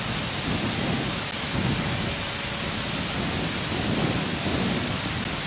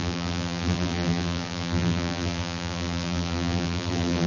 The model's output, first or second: second